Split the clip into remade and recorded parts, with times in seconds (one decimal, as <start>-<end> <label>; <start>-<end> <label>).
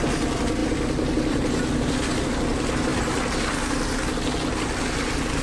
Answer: 0.0-5.4 recorded